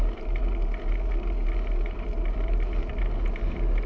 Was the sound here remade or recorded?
recorded